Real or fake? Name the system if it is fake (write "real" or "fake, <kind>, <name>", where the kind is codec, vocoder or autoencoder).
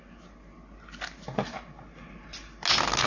real